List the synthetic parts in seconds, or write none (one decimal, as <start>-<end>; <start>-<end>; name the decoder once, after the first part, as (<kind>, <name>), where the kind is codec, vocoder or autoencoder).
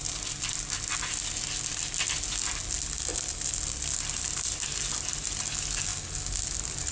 3.1-3.6 (vocoder, BigVGAN v2)